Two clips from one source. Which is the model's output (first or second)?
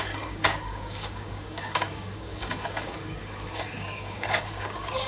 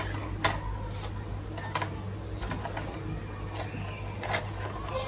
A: first